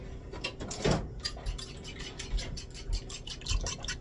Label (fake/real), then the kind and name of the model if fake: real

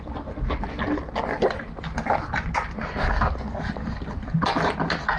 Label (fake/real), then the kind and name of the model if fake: real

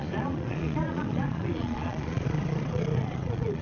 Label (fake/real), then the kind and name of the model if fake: fake, vocoder, Vocos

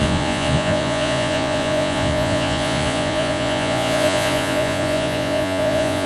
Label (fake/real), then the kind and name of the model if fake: fake, vocoder, Vocos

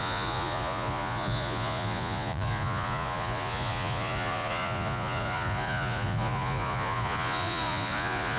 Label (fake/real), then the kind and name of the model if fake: fake, vocoder, Vocos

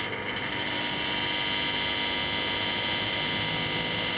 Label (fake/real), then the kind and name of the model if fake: real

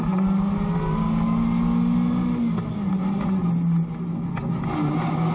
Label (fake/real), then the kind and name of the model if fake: real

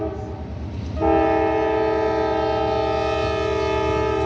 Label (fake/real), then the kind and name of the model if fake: real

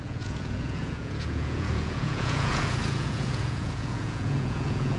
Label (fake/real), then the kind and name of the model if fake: fake, vocoder, Vocos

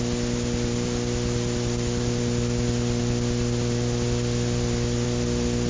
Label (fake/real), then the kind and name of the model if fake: real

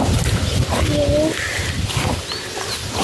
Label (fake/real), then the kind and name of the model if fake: real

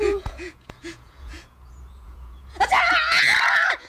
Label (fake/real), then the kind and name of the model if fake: fake, vocoder, Vocos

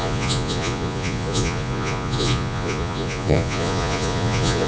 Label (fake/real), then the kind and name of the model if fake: fake, vocoder, Vocos